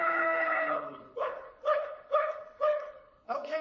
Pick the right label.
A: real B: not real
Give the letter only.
B